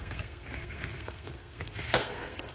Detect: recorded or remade remade